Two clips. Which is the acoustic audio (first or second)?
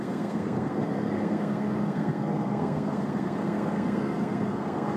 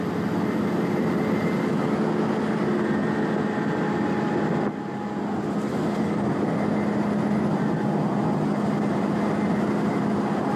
second